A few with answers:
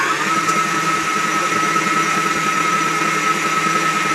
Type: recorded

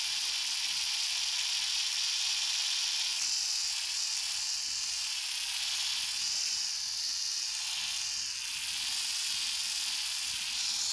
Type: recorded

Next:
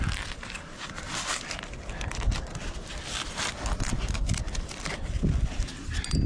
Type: recorded